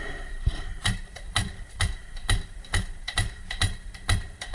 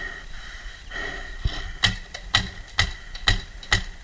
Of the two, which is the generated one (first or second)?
first